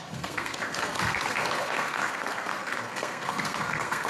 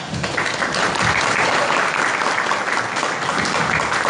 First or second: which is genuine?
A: second